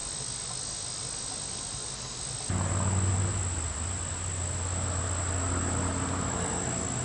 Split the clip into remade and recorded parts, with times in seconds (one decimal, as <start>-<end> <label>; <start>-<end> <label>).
0.0-7.0 recorded